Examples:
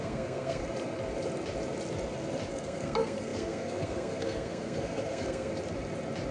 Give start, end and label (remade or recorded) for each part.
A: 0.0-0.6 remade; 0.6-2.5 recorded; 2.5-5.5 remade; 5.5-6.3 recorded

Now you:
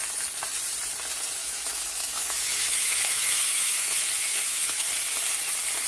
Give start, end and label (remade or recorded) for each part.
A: 0.0-1.4 recorded; 1.4-4.9 remade; 4.9-5.9 recorded